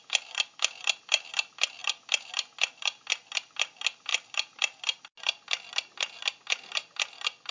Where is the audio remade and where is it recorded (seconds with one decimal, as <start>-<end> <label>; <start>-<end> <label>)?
0.0-7.5 recorded